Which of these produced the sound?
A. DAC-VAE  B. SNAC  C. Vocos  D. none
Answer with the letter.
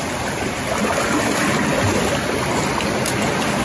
D